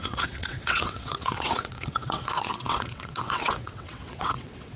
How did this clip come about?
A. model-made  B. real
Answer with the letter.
A